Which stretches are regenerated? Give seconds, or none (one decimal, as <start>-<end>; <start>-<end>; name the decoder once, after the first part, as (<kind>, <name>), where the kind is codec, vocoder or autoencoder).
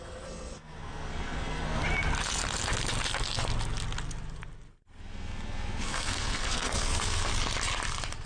0.0-1.8 (codec, SNAC); 4.7-7.3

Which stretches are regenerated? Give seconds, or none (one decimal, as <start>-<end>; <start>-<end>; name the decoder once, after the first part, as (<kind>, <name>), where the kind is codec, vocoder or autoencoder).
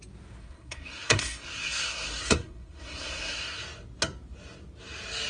0.4-3.6 (codec, SNAC)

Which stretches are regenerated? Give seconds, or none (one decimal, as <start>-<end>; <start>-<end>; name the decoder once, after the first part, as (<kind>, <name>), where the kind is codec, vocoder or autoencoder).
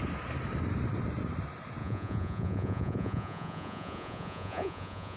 1.8-5.2 (vocoder, Vocos)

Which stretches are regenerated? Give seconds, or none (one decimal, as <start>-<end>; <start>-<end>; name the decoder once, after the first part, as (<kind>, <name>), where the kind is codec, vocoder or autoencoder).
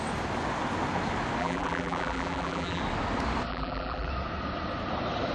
1.4-2.8 (vocoder, BigVGAN v2); 3.5-4.1